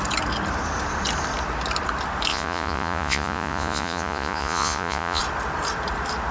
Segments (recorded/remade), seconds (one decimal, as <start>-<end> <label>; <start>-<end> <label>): 0.0-2.3 recorded; 2.3-5.2 remade; 5.2-6.3 recorded